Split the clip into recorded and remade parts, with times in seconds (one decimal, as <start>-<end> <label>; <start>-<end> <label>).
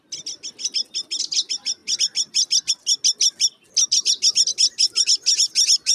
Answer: 0.0-5.9 recorded